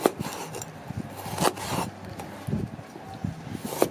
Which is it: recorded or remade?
recorded